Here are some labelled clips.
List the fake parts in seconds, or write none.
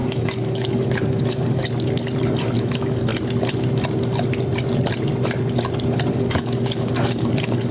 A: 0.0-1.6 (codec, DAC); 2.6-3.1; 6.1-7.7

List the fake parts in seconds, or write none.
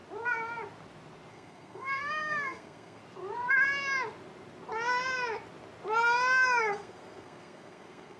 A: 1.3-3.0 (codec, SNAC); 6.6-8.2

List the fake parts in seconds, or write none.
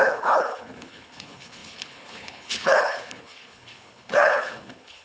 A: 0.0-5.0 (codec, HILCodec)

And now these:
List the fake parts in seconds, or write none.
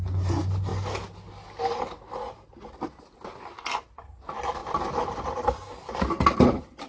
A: none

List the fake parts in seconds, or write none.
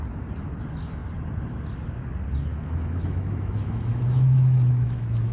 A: 2.5-5.3 (autoencoder, DAC-VAE)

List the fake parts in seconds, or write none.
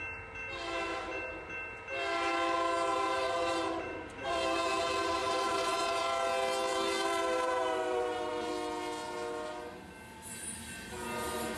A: 2.9-4.8 (vocoder, BigVGAN v2); 5.2-6.0; 6.7-8.5